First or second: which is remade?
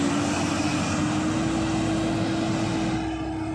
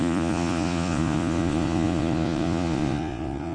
second